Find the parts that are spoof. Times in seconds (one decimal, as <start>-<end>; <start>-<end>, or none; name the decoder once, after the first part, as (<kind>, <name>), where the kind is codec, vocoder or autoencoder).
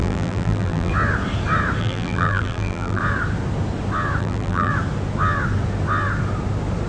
0.0-0.9 (vocoder, BigVGAN v2); 1.8-3.0; 4.2-4.7